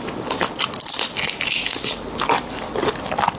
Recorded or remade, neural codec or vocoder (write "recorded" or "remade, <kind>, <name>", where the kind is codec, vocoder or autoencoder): recorded